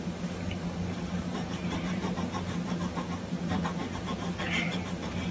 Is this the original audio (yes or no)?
no